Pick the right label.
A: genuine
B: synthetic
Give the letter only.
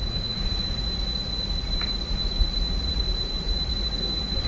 B